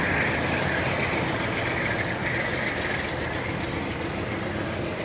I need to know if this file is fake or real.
real